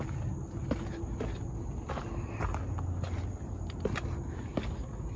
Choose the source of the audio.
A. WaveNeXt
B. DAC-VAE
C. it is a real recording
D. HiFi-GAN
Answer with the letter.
C